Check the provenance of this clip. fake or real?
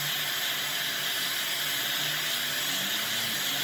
real